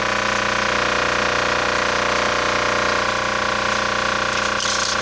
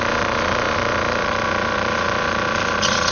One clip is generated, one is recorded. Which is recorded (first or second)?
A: first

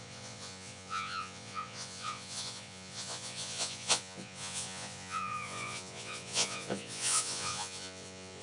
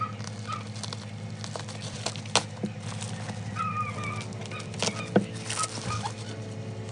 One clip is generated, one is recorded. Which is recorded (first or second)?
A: second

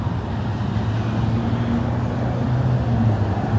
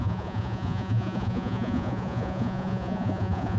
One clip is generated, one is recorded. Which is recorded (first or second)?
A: first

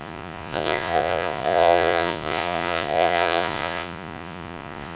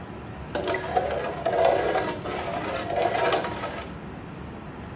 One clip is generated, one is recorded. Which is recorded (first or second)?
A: second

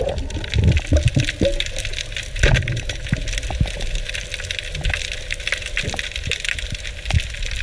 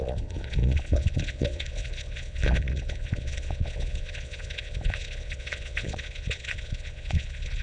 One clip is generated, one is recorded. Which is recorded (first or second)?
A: first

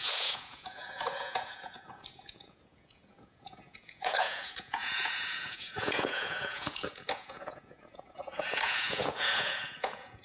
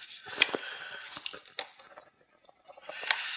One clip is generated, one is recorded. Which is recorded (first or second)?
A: second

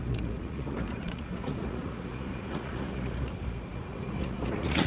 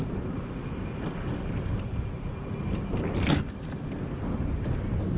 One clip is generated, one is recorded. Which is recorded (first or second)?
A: second